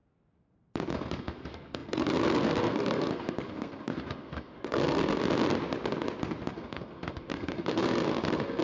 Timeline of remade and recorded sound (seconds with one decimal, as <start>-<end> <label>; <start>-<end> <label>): 0.0-0.9 recorded; 0.9-5.2 remade; 5.2-6.5 recorded; 6.5-8.6 remade